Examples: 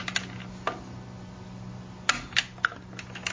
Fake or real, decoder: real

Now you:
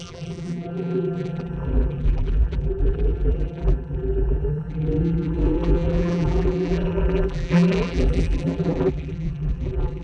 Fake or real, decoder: fake, vocoder, BigVGAN v2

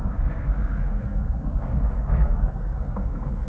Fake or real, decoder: fake, codec, SNAC